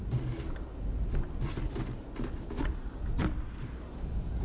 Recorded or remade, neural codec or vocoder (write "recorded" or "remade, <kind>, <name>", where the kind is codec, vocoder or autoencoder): recorded